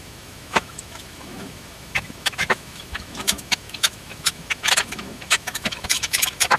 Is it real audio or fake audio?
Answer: fake